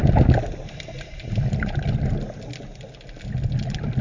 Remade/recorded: recorded